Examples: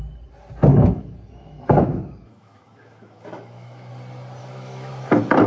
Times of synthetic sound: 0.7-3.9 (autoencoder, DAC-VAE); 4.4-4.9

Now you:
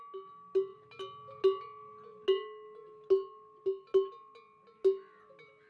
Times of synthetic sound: none

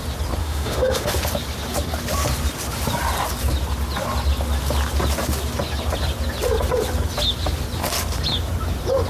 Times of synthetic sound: 0.4-1.1 (autoencoder, DAC-VAE)

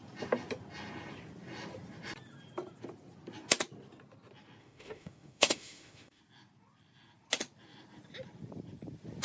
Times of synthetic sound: 4.6-6.2 (autoencoder, DAC-VAE)